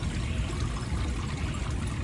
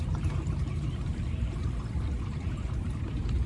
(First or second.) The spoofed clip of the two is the second